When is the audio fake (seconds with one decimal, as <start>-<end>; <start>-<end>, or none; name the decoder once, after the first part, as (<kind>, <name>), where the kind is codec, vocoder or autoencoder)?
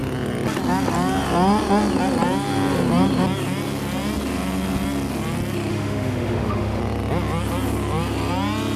5.7-6.8 (autoencoder, DAC-VAE)